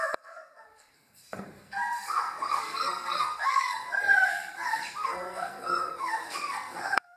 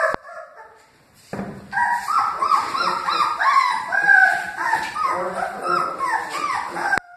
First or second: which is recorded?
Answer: second